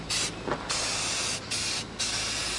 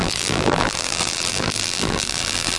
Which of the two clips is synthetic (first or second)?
second